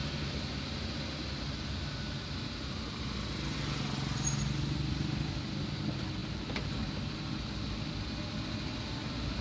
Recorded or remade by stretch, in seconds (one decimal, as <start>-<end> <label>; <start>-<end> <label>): 0.0-9.4 recorded